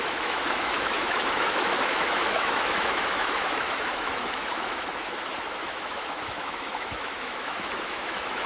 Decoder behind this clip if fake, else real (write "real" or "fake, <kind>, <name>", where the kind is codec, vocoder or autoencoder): fake, autoencoder, DAC-VAE